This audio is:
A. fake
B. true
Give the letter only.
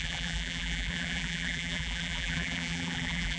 A